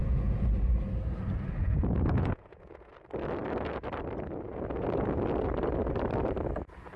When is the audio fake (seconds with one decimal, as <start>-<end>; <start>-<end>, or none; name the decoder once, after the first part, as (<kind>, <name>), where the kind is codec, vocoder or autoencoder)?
0.0-0.5 (vocoder, Vocos); 1.6-2.9